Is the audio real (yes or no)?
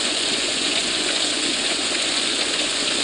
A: no